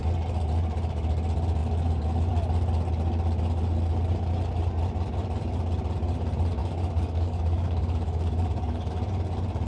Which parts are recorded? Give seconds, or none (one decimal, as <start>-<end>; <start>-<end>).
0.0-6.6; 8.9-9.7